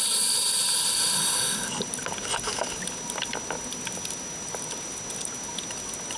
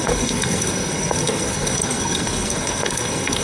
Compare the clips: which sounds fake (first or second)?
second